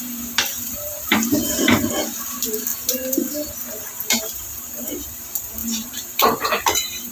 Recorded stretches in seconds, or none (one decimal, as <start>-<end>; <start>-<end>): none